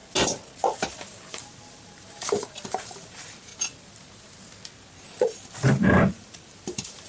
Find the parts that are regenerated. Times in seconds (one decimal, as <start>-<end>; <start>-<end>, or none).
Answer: 1.1-3.5; 6.1-7.1